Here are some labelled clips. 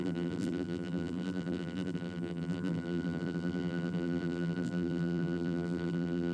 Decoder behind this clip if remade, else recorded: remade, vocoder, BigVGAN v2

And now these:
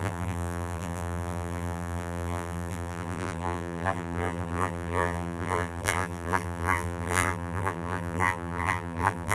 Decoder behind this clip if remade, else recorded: remade, vocoder, BigVGAN v2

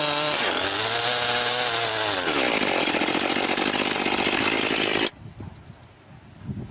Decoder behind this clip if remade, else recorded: recorded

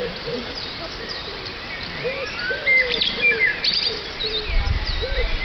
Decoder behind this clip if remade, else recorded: remade, vocoder, BigVGAN v2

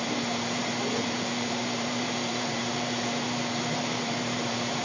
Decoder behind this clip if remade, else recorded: remade, vocoder, BigVGAN v2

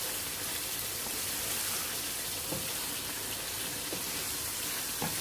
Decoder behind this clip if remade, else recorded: remade, vocoder, BigVGAN v2